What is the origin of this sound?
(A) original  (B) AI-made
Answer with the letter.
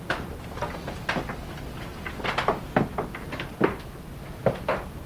A